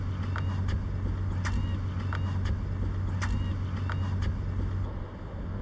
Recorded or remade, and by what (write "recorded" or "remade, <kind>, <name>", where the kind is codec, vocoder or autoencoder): recorded